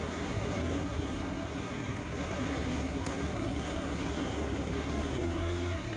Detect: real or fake fake